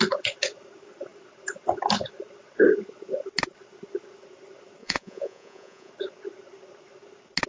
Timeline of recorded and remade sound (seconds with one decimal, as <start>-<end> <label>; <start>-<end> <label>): 0.0-4.8 recorded; 4.8-5.9 remade; 5.9-7.5 recorded